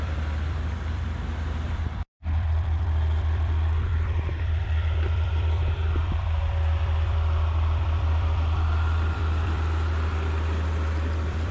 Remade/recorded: remade